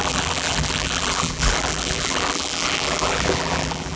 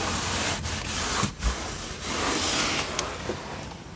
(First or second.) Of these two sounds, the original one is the second